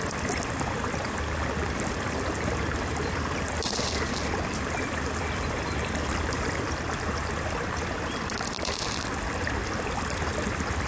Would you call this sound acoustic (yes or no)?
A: no